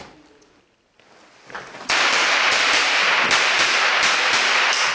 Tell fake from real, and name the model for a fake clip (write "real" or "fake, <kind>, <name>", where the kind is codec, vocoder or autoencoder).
real